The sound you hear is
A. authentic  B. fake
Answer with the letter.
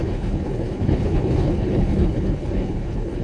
B